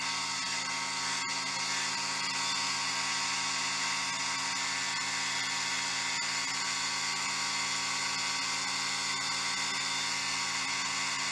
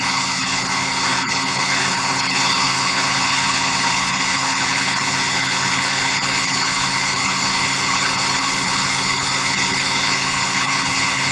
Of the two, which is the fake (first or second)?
second